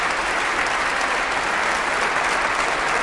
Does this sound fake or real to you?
real